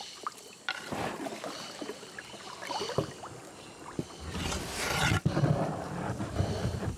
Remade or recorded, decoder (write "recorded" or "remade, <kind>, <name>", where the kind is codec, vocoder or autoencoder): remade, vocoder, BigVGAN v2